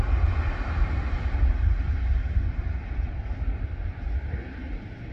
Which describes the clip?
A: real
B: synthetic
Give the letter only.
A